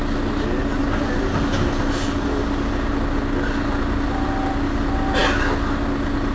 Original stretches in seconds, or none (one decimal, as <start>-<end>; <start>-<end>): 0.0-6.3